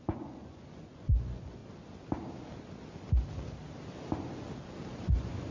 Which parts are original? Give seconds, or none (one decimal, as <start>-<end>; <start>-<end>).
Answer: 1.6-4.9